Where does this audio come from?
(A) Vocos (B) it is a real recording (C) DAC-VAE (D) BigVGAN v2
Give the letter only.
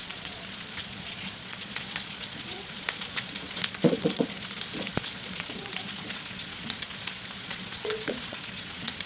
A